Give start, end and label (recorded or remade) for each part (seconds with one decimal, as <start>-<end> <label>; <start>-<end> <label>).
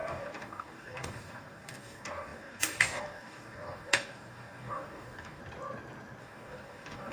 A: 0.0-5.4 remade; 5.4-6.2 recorded; 6.2-7.1 remade